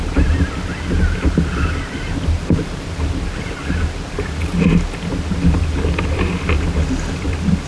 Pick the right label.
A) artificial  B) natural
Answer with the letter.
B